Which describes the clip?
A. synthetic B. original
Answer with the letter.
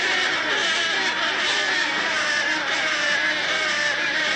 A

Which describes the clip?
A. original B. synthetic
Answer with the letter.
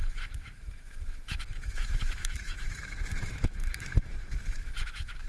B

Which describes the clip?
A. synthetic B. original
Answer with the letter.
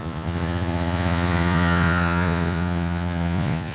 A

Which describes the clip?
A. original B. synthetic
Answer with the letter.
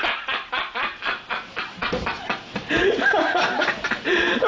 B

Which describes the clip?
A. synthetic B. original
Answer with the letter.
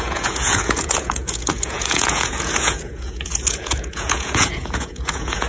A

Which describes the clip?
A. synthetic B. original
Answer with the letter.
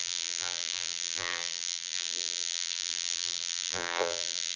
A